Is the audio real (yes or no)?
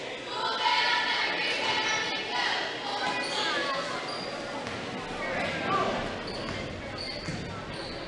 yes